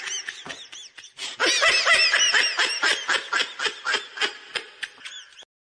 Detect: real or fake real